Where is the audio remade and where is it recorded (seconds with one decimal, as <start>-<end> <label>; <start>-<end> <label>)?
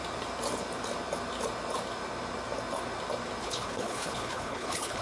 0.0-3.4 recorded; 3.4-5.0 remade